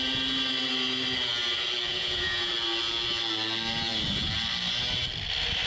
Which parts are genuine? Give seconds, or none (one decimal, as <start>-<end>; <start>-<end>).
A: 0.0-1.9; 2.5-5.7